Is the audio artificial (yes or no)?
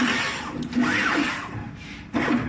no